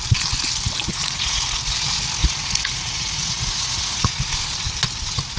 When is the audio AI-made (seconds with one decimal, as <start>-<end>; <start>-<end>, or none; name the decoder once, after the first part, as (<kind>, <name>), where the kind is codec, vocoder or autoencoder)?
0.9-1.4 (vocoder, Vocos); 2.2-4.1

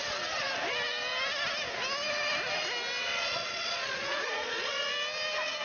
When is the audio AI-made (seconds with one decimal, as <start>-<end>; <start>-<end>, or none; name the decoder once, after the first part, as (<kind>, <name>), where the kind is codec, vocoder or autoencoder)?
3.0-4.9 (vocoder, Vocos)

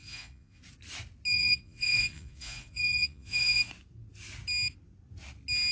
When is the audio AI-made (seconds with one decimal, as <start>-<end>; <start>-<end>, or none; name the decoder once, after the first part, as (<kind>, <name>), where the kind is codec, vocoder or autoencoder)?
0.0-0.6 (vocoder, Vocos); 1.3-3.7

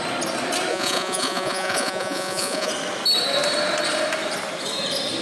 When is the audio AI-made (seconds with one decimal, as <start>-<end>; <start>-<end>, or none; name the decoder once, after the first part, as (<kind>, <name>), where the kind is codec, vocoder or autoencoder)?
0.7-2.7 (vocoder, Vocos)